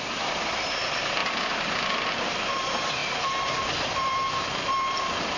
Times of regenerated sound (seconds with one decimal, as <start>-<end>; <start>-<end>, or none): 0.0-5.4